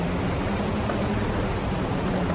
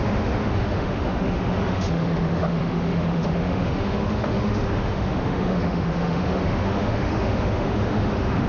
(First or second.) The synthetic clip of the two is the second